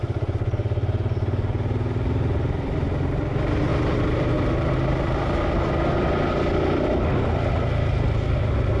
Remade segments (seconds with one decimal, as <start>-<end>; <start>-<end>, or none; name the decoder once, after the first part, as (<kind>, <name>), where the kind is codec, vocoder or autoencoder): 3.7-4.3 (vocoder, BigVGAN v2)